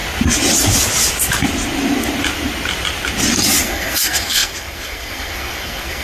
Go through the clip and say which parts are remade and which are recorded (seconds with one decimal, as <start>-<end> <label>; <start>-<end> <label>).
0.0-3.6 recorded; 3.6-6.0 remade